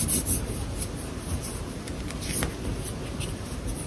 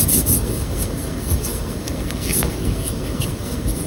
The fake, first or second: second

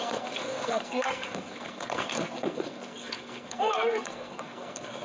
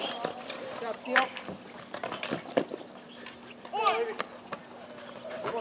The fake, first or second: first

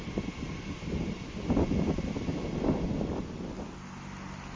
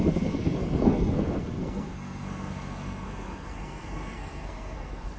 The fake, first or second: second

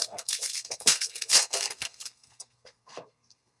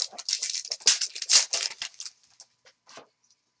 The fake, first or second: first